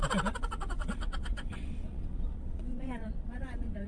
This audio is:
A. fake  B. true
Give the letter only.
A